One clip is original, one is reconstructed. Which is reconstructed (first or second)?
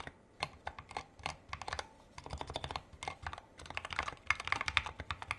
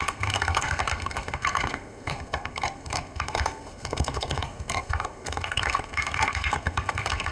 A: second